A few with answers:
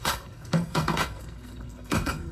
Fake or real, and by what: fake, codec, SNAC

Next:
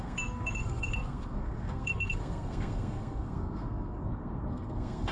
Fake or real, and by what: fake, codec, SNAC